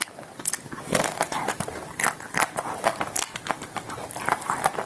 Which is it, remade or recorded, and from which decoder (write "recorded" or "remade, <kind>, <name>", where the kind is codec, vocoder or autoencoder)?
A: recorded